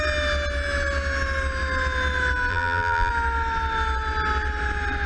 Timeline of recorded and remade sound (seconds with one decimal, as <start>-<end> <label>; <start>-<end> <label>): 0.0-2.5 recorded; 2.5-3.1 remade; 3.1-5.1 recorded